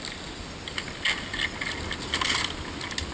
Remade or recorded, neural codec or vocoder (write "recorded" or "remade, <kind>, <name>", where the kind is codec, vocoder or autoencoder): recorded